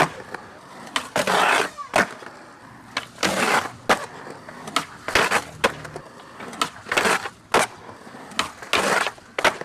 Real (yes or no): yes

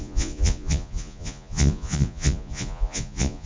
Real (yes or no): no